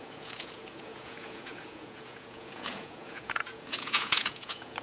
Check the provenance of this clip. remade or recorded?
remade